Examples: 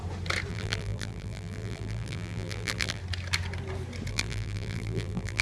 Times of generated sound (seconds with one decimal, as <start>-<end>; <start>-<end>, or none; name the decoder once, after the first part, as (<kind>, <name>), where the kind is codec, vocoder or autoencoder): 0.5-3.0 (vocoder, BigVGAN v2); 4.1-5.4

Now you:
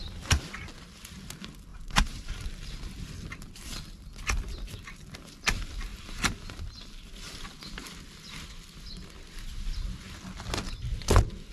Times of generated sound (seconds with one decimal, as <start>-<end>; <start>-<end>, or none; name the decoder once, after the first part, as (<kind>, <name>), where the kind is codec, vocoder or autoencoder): 1.7-2.7 (vocoder, BigVGAN v2)

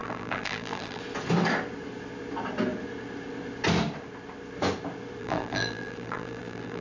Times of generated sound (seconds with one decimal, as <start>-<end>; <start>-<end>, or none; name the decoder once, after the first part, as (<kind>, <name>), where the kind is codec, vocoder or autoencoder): 0.0-1.0 (vocoder, BigVGAN v2); 5.2-6.8

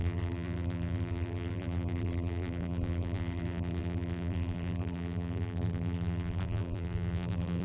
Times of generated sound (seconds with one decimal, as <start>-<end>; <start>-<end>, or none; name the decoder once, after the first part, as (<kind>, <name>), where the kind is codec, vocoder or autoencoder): 0.0-7.6 (vocoder, BigVGAN v2)